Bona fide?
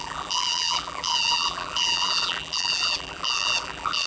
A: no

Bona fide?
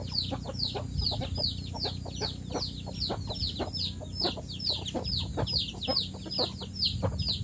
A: yes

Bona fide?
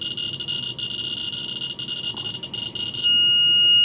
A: yes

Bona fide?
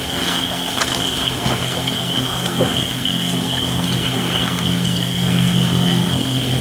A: no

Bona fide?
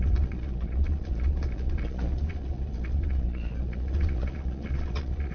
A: no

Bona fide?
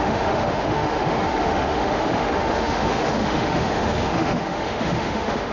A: no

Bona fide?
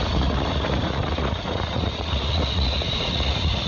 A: no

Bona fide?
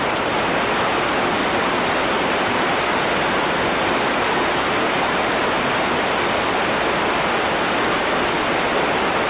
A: yes